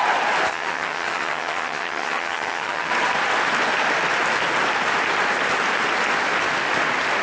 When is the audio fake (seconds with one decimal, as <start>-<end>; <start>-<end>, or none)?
0.5-2.9